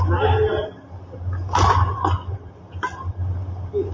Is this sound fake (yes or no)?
no